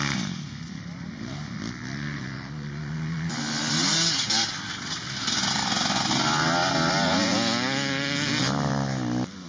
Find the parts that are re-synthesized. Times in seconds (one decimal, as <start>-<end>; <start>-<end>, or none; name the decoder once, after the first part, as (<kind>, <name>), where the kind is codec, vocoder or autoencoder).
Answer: none